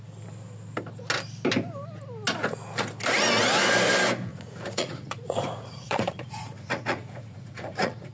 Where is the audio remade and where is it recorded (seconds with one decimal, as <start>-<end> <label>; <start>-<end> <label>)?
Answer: 0.0-4.3 recorded; 4.3-8.1 remade